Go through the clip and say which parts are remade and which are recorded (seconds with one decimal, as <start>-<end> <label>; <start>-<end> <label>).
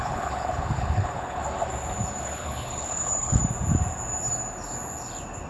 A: 0.0-1.4 remade; 1.4-2.2 recorded; 2.2-3.4 remade; 3.4-5.5 recorded